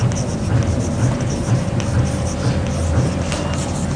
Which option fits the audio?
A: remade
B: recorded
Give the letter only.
B